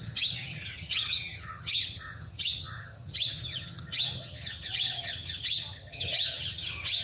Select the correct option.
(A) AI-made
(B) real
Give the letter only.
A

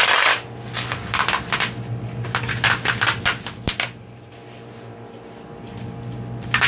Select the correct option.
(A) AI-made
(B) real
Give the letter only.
B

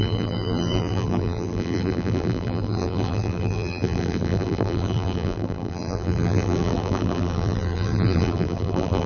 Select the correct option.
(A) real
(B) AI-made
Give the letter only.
B